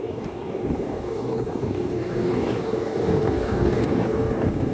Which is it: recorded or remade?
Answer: remade